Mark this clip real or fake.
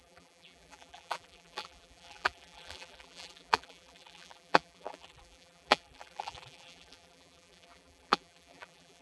fake